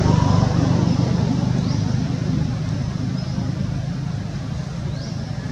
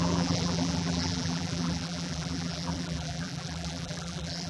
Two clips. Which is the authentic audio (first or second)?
first